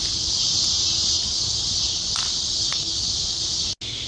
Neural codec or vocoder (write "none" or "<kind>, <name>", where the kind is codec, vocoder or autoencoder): none